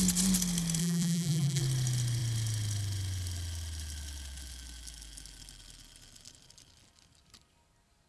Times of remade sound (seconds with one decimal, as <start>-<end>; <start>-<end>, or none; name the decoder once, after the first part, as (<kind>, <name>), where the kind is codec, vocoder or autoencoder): 0.8-1.6 (vocoder, BigVGAN v2)